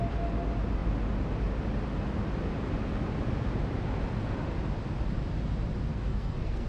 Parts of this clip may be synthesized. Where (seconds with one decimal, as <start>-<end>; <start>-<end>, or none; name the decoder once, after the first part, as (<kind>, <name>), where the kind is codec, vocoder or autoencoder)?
5.9-6.7 (codec, SNAC)